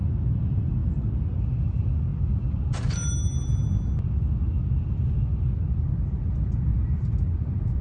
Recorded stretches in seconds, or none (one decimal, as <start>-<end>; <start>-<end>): 0.0-6.7